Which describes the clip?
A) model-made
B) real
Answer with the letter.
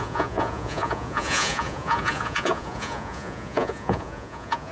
A